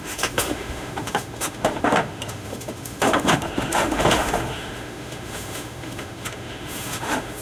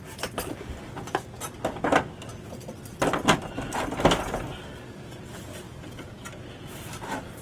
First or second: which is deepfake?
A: first